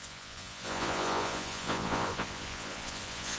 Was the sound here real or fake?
fake